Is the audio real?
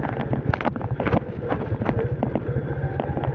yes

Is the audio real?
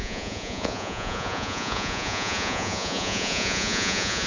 no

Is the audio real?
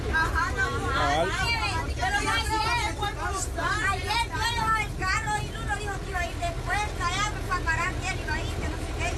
yes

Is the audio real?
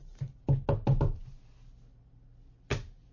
yes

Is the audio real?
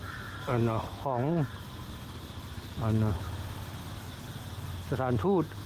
yes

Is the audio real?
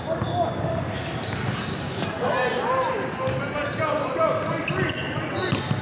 yes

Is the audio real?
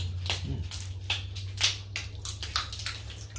yes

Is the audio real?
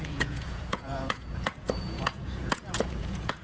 no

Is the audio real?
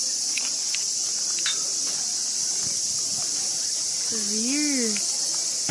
yes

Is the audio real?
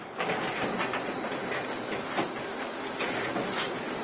no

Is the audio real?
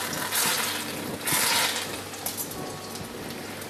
yes